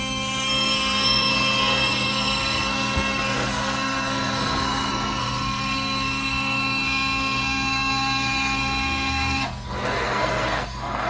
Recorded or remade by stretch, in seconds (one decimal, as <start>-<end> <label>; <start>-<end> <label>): 0.0-11.1 remade